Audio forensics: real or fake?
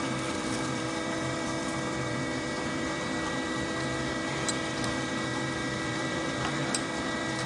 fake